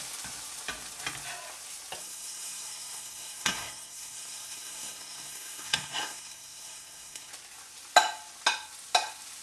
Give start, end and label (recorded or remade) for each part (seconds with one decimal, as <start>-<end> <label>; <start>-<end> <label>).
0.0-2.0 recorded; 2.0-7.3 remade; 7.3-9.4 recorded